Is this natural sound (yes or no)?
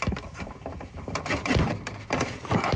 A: no